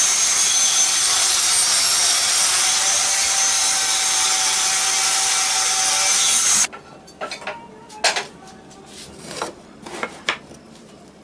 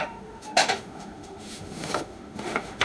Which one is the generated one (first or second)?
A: second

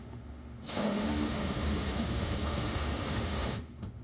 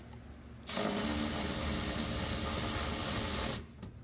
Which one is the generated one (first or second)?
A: first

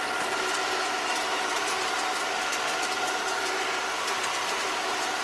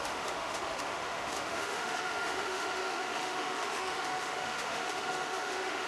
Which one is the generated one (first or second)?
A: second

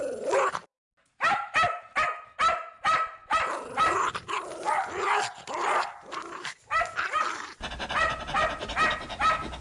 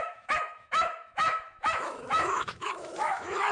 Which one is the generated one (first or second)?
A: second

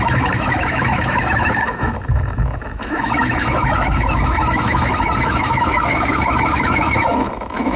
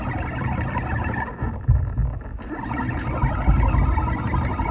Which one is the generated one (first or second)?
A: first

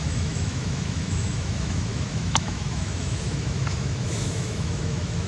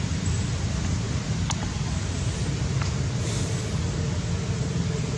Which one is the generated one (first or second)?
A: first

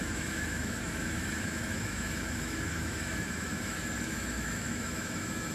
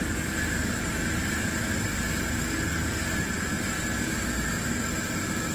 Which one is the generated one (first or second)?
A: first